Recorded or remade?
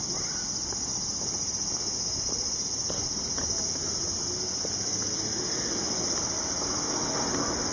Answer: recorded